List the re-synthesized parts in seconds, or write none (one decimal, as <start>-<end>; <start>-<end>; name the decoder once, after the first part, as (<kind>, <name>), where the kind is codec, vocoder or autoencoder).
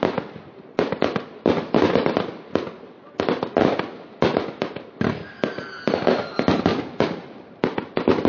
6.7-7.9 (vocoder, BigVGAN v2)